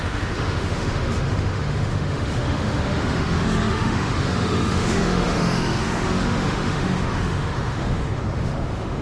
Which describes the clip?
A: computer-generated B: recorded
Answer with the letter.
A